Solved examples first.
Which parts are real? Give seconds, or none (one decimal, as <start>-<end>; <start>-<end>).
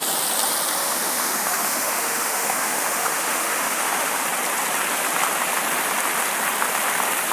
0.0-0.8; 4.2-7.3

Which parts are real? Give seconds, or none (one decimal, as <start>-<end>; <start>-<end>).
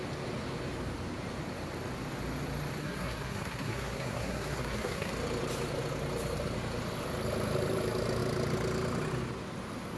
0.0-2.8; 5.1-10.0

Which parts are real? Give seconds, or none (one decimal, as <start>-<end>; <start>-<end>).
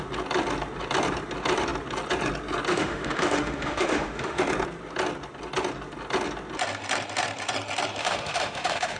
0.0-2.7; 4.4-8.0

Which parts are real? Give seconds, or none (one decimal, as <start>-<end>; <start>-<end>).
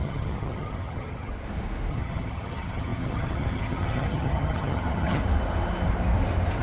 1.3-1.9; 5.2-6.6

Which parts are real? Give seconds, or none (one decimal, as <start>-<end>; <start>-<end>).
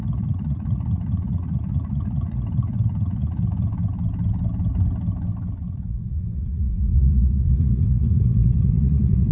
3.7-5.6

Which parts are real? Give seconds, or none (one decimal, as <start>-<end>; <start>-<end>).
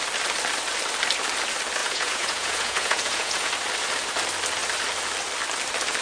0.0-1.8; 3.5-6.0